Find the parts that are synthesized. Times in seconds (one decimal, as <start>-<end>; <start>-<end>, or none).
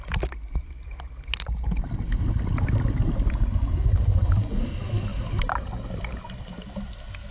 none